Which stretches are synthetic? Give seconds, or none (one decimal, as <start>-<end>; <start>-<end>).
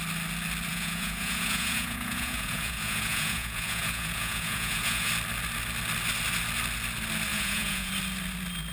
0.7-5.1; 7.3-7.9